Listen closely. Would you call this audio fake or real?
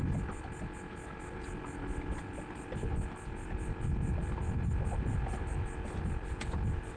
real